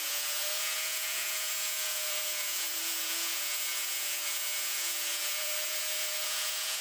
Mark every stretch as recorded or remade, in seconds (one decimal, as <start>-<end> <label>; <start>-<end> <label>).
0.0-6.8 remade